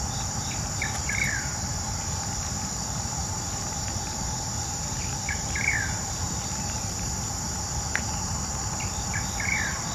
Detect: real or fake fake